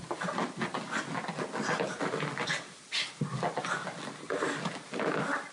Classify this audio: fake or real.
real